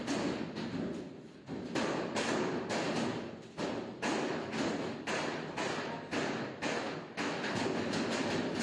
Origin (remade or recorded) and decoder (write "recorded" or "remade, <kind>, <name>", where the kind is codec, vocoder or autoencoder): recorded